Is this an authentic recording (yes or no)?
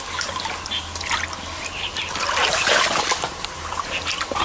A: yes